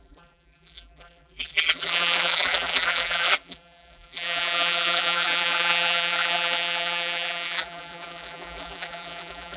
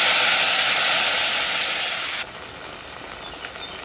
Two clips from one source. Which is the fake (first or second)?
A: first